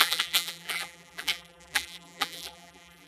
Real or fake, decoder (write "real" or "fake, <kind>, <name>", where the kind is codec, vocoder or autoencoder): fake, vocoder, BigVGAN v2